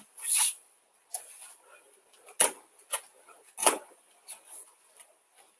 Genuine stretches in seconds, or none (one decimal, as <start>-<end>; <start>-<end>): 0.0-3.6; 4.9-5.6